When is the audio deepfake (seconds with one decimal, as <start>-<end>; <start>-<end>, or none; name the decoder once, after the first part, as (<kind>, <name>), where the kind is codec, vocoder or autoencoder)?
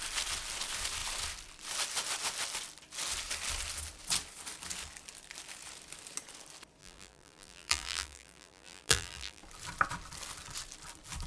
6.8-9.4 (vocoder, BigVGAN v2)